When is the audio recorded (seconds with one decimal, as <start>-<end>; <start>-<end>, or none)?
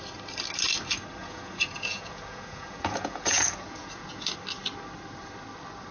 0.0-1.2; 4.2-5.9